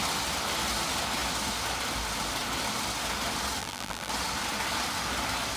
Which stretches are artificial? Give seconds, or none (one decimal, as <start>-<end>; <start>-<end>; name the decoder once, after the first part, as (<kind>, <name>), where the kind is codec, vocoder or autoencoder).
3.6-4.1 (vocoder, BigVGAN v2)